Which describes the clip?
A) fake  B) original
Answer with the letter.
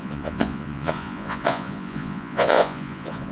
A